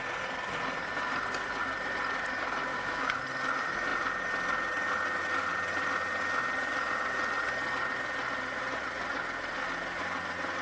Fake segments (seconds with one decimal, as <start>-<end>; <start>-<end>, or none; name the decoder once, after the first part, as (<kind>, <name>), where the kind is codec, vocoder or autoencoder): 2.7-3.2 (autoencoder, DAC-VAE)